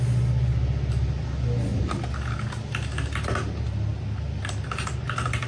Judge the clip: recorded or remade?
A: recorded